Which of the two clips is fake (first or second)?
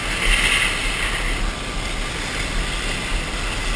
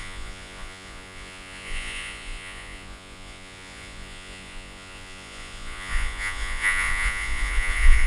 second